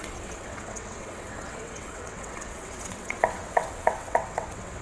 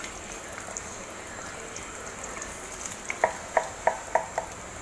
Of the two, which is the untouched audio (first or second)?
second